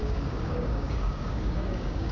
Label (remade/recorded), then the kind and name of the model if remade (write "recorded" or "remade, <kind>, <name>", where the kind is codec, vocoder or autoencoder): remade, codec, DAC